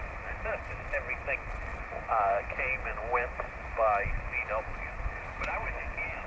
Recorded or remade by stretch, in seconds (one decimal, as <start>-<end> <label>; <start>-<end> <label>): 0.0-6.3 recorded